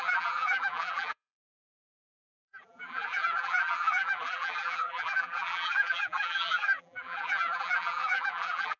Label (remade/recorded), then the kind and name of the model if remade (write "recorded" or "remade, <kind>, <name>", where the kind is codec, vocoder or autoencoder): remade, vocoder, BigVGAN v2